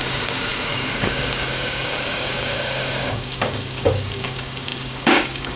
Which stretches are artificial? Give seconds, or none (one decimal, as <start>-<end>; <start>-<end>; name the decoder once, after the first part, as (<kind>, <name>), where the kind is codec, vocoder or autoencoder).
0.0-5.6 (codec, DAC)

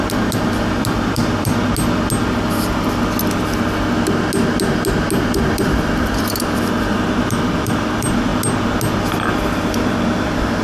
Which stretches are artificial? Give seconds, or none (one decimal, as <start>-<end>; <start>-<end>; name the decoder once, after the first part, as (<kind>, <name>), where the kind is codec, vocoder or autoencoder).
0.0-1.5 (vocoder, BigVGAN v2); 5.2-8.3; 9.7-10.6

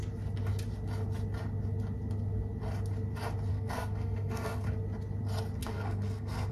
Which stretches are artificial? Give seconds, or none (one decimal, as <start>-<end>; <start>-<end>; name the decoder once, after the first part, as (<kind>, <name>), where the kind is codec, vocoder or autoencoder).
3.5-4.7 (codec, SNAC); 5.6-6.5

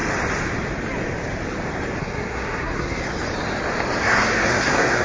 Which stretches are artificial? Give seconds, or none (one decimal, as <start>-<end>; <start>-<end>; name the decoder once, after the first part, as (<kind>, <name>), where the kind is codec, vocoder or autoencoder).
2.0-3.0 (codec, SNAC); 4.0-5.0

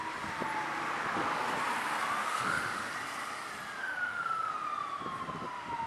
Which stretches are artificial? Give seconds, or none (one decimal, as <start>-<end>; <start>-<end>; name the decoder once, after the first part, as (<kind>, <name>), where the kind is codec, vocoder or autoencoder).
2.2-2.9 (autoencoder, DAC-VAE); 3.8-4.5